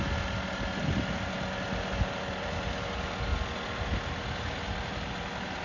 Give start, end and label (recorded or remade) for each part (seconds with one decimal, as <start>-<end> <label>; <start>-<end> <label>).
0.0-5.6 recorded